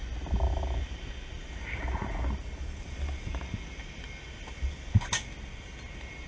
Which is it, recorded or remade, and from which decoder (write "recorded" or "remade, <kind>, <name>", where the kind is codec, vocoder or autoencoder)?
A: recorded